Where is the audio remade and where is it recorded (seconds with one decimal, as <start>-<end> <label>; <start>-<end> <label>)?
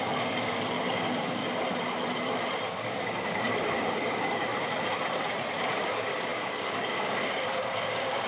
0.0-1.4 remade; 1.4-2.6 recorded; 2.6-4.5 remade; 4.5-5.8 recorded; 5.8-8.3 remade